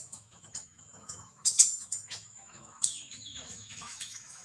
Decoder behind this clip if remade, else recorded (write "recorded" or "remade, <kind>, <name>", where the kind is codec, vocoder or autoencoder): remade, autoencoder, DAC-VAE